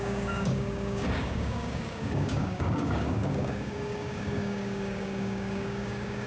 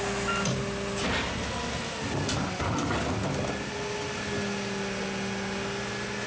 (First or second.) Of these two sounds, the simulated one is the first